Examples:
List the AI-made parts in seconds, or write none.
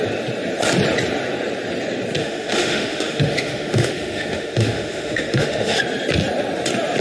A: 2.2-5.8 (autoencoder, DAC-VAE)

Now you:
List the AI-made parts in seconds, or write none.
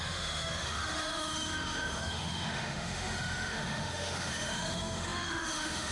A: 0.0-5.9 (autoencoder, DAC-VAE)